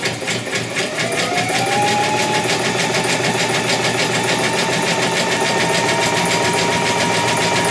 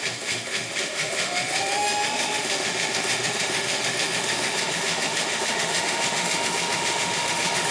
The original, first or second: first